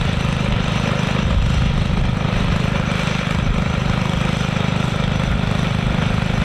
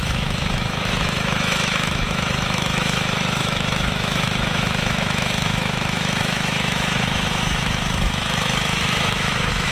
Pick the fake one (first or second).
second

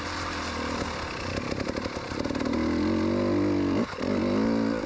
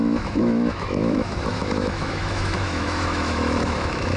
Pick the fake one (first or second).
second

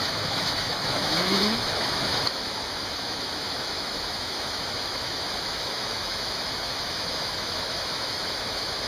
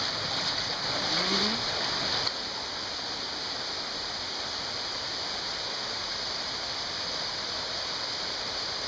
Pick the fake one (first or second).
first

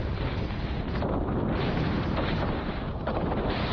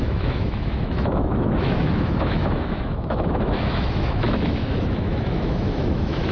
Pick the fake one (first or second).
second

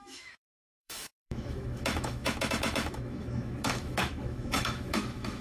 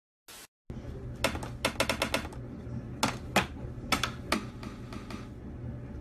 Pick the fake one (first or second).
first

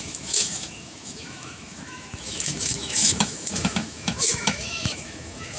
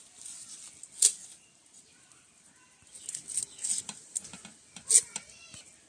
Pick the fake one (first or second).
first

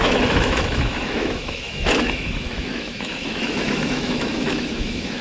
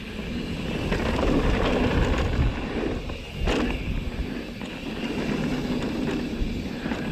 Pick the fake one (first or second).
first